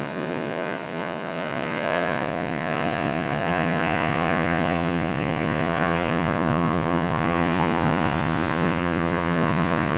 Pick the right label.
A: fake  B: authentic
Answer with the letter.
A